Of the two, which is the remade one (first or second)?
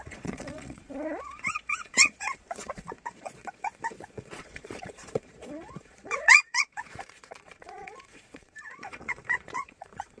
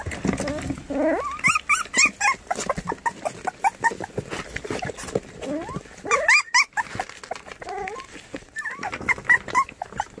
first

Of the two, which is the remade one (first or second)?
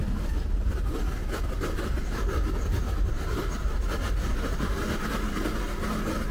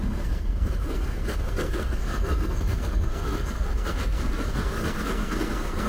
second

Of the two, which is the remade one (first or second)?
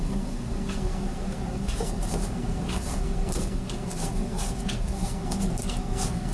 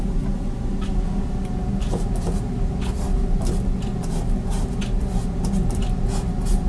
first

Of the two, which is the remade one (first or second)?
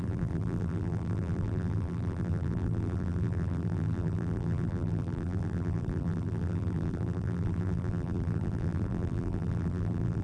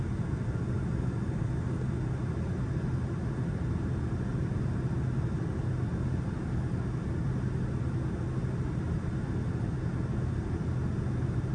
first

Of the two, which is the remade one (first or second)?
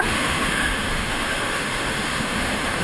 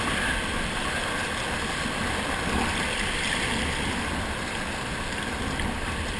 first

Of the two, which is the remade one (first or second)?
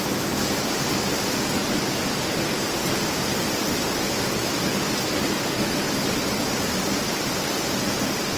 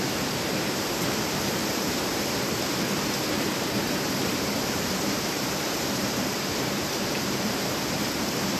second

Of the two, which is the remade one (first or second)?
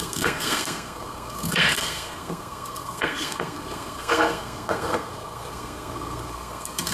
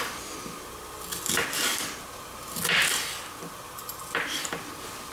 first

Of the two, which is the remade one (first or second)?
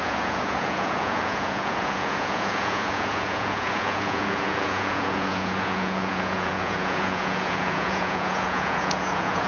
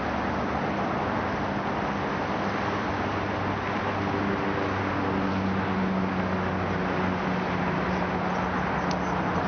first